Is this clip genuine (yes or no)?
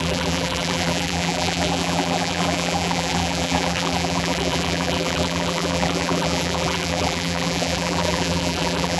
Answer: no